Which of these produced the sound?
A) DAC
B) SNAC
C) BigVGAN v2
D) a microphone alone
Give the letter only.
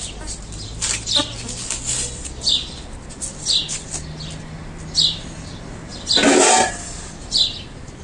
D